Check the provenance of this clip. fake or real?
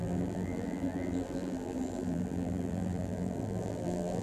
fake